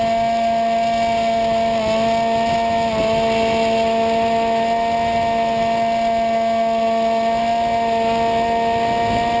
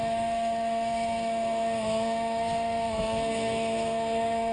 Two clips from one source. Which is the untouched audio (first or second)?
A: first